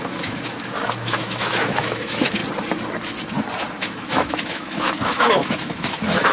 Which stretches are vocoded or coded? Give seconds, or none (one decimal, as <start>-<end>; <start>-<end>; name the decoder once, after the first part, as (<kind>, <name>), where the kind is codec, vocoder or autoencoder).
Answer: 0.0-2.4 (autoencoder, DAC-VAE); 3.7-6.3